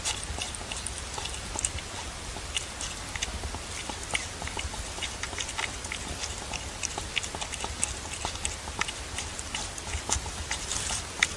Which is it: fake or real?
real